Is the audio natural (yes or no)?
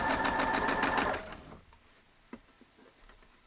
yes